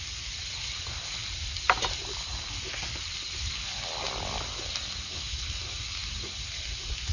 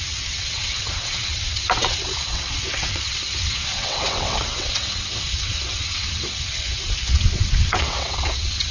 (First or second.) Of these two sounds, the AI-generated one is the second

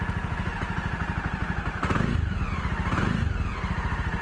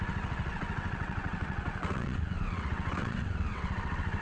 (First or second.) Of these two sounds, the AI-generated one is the second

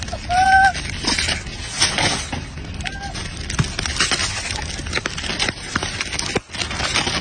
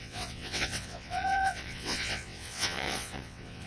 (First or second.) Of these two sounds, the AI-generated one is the second